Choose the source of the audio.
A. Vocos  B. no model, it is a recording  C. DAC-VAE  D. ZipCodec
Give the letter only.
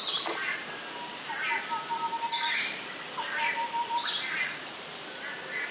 B